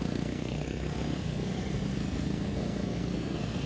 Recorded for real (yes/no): no